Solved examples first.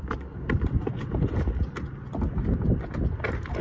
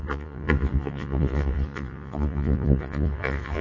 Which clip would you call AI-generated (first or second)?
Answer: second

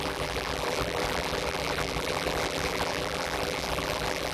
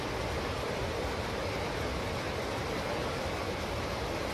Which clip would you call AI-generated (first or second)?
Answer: first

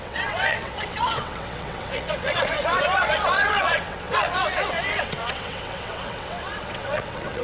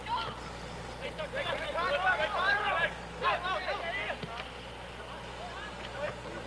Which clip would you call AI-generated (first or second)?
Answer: first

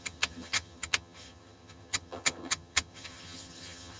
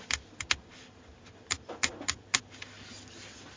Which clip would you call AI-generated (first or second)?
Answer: first